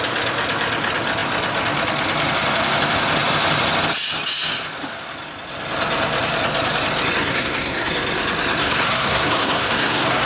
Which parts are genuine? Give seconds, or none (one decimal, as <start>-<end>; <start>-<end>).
0.0-7.3; 7.9-8.6

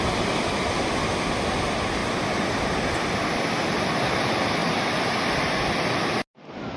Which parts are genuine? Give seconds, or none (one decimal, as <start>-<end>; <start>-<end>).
0.0-6.8

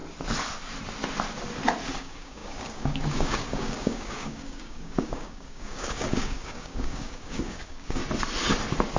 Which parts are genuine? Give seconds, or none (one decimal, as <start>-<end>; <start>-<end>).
0.0-2.0; 8.0-9.0

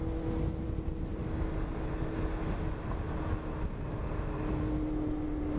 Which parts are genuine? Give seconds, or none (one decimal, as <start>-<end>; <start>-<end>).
0.0-5.6

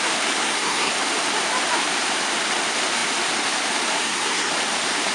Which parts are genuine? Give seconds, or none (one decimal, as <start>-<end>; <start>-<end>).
0.0-0.4; 0.9-4.0; 4.5-5.1